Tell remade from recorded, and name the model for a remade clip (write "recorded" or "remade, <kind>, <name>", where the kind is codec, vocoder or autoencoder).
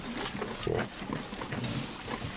recorded